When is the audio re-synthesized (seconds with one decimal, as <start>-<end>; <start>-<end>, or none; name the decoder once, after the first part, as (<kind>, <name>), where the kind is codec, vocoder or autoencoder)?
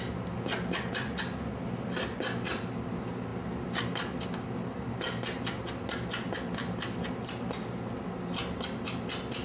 none